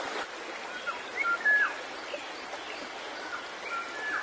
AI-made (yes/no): no